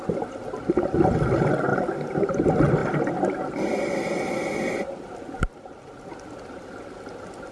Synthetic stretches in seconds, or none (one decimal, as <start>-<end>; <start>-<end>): 0.0-2.8; 6.8-7.5

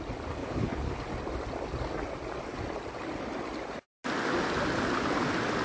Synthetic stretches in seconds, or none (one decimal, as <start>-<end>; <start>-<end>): 0.4-1.0

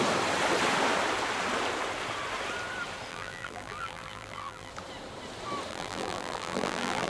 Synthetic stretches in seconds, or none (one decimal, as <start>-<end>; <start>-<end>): 3.1-4.7; 5.7-7.1

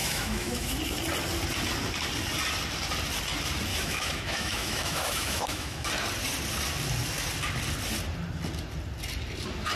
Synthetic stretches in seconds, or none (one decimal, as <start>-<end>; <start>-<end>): 0.0-0.8; 3.7-5.9

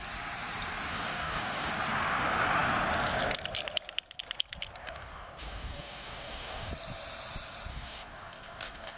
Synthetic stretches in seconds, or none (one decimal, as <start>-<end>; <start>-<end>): 0.9-1.7; 4.8-6.7; 7.7-9.0

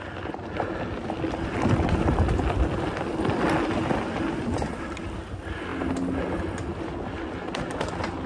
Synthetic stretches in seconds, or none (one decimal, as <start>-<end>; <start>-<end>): none